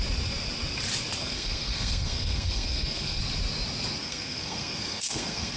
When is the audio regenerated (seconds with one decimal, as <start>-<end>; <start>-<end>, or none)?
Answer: 1.2-3.2; 4.0-5.6